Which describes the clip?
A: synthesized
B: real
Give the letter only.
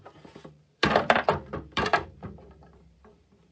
A